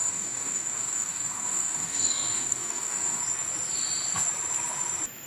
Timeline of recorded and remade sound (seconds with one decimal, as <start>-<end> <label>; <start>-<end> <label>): 0.0-3.2 remade; 3.2-5.3 recorded